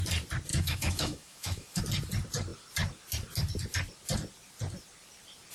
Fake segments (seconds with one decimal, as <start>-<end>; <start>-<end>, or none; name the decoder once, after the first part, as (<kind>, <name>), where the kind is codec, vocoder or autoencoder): 0.5-1.8 (autoencoder, DAC-VAE)